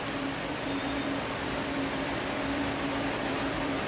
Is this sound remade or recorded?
remade